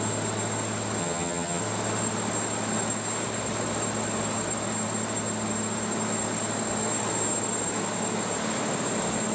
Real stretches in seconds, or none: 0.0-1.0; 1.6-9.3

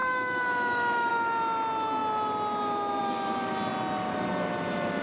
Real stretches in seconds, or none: 1.1-5.0

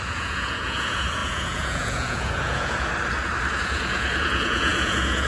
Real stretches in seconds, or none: 2.9-3.5

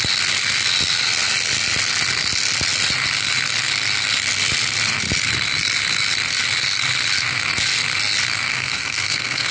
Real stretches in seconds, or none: 0.0-8.5